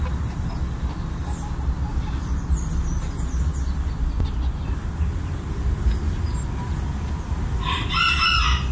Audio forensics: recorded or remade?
recorded